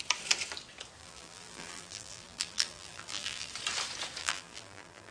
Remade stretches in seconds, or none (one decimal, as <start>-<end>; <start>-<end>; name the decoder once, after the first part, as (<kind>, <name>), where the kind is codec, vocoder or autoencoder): 1.0-3.5 (vocoder, BigVGAN v2); 4.2-5.1